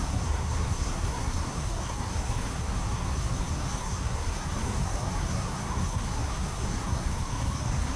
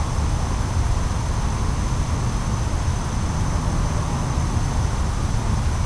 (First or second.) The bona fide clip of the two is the second